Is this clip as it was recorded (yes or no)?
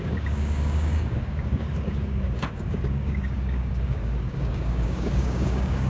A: no